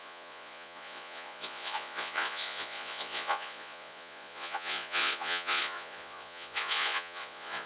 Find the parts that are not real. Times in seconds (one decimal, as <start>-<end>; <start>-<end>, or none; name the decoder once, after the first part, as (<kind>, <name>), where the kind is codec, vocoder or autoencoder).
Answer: 0.0-7.7 (vocoder, Vocos)